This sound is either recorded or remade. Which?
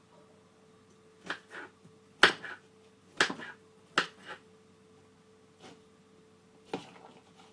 recorded